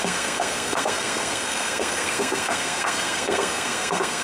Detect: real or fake fake